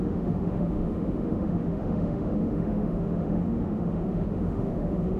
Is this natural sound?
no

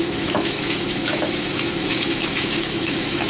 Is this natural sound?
no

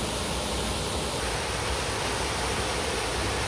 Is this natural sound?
yes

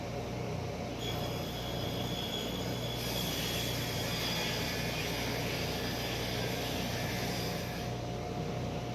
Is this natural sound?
yes